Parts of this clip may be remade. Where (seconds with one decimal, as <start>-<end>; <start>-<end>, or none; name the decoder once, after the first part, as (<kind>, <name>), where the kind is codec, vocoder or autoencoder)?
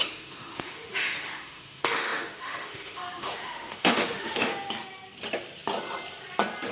0.0-4.5 (autoencoder, DAC-VAE)